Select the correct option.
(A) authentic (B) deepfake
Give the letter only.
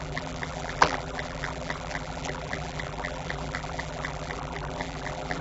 B